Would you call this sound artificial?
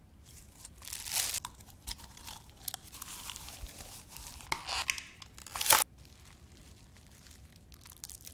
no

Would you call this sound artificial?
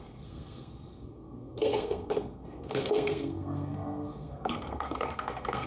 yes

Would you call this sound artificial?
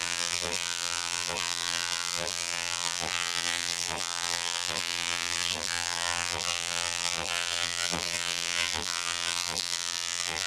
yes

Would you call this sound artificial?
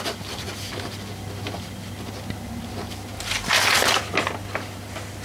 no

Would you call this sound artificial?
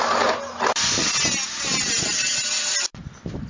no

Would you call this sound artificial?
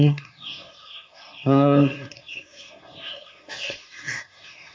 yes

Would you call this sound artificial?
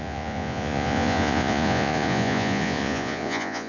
yes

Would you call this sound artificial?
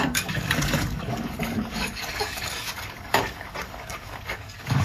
yes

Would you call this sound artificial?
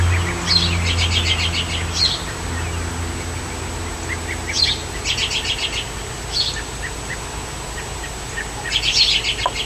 no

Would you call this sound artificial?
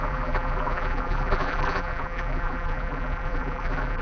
yes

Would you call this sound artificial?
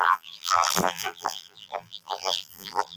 yes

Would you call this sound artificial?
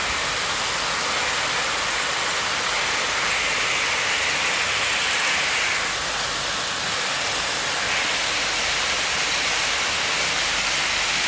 no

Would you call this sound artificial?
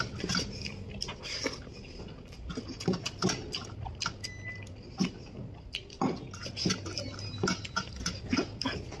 no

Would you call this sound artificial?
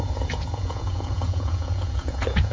yes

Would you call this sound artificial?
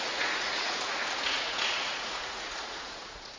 yes